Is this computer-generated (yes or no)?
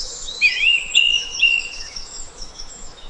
yes